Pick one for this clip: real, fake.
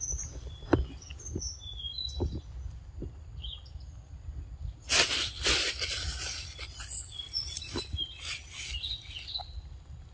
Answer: real